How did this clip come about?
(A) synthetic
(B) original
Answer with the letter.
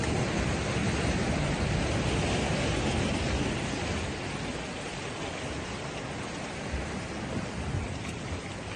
B